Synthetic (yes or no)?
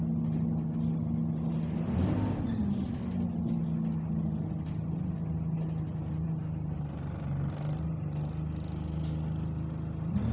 no